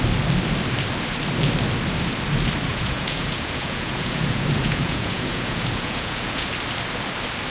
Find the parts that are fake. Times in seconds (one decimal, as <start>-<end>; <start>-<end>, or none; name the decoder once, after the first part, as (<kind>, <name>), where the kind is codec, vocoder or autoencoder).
2.7-6.5 (vocoder, Vocos)